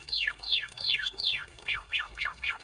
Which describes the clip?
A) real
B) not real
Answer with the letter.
B